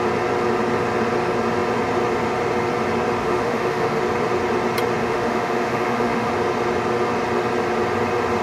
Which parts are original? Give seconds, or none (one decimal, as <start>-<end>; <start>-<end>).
0.0-3.2; 4.0-5.0; 6.3-8.4